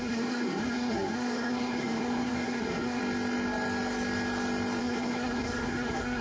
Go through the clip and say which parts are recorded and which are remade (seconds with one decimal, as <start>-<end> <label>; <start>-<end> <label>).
0.0-3.0 remade; 3.0-4.8 recorded; 4.8-6.2 remade